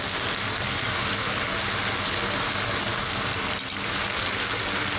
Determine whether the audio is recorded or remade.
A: recorded